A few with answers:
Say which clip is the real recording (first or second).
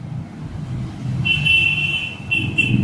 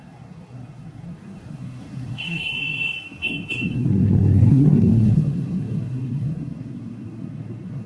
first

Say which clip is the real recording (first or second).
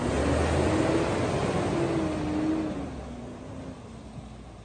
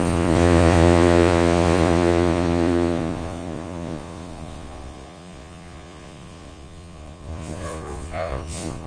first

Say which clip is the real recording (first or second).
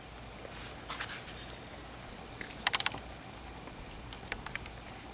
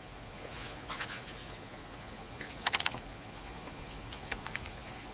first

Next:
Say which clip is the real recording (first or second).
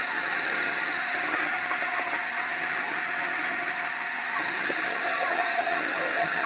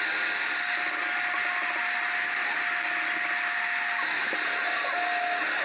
second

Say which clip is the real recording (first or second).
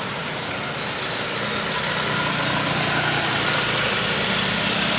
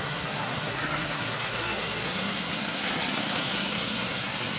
first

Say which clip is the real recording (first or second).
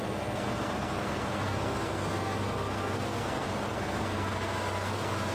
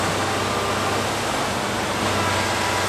second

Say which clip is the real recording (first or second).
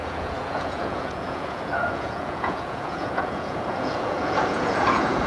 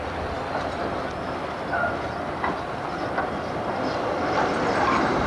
second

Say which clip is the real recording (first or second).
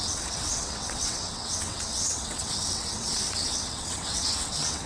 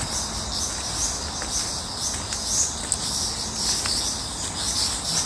second